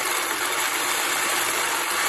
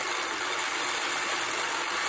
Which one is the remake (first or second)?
first